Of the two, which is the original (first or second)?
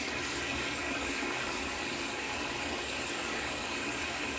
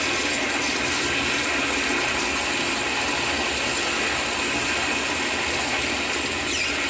second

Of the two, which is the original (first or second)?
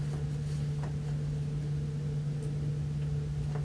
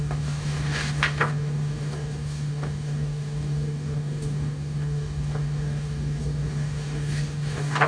first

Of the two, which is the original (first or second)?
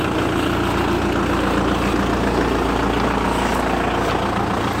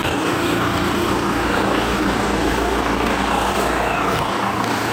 first